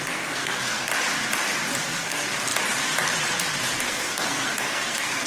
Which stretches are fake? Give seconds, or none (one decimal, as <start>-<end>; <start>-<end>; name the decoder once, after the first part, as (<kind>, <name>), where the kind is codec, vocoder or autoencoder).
0.0-0.9 (codec, SNAC); 1.8-2.5; 3.8-5.3

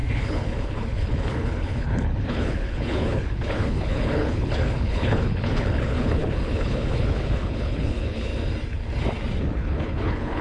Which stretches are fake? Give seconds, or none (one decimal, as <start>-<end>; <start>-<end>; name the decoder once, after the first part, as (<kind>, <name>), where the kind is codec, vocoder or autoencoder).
0.0-8.3 (codec, HILCodec); 9.4-10.4